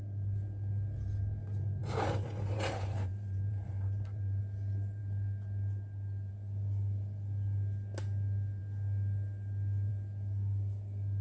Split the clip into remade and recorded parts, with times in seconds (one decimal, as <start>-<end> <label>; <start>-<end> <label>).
0.0-1.8 recorded; 1.8-4.4 remade; 4.4-11.2 recorded